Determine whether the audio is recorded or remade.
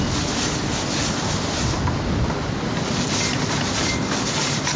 recorded